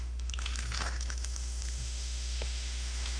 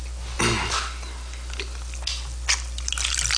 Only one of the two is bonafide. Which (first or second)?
second